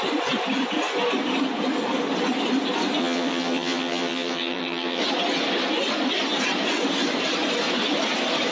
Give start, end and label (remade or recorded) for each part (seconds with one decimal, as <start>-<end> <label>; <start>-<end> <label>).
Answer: 0.0-3.0 recorded; 3.0-5.0 remade; 5.0-8.5 recorded